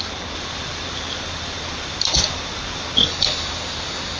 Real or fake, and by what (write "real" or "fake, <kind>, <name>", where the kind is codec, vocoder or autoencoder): real